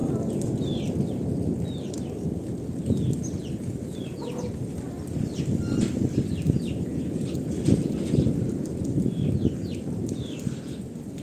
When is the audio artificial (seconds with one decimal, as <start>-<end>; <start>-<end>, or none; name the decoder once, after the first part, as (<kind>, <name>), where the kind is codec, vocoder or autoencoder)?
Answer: none